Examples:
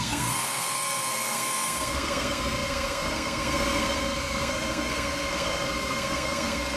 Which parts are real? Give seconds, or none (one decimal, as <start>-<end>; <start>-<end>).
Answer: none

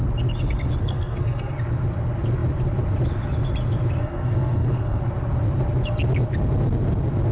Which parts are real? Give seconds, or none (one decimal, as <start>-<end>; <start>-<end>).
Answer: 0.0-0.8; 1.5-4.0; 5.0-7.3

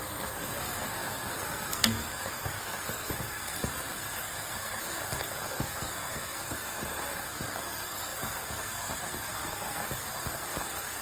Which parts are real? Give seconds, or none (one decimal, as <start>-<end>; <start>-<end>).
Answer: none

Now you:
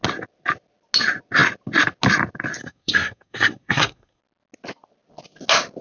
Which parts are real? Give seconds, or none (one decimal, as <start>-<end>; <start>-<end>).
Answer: 0.0-2.6; 4.2-5.8

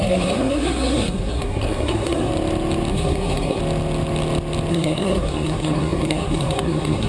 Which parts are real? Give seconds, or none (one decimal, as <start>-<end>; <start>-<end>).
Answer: 2.3-2.9; 3.6-4.7

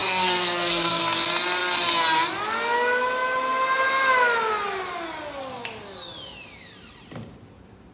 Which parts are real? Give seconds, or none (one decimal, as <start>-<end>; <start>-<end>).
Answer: 1.0-7.9

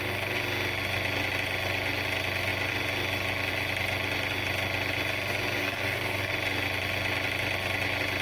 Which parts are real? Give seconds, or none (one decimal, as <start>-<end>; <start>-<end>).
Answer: 0.0-5.6; 6.3-8.2

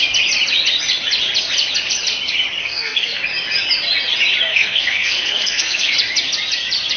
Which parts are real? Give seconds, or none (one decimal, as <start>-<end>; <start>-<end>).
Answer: 0.0-2.6; 3.2-4.5; 5.9-7.0